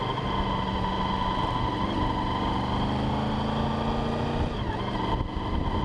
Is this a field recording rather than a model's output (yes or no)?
yes